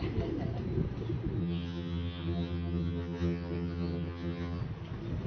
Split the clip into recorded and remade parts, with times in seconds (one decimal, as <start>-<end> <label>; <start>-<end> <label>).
0.0-1.4 recorded; 1.4-4.6 remade; 4.6-5.3 recorded